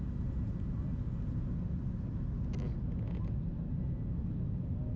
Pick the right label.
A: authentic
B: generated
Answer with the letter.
A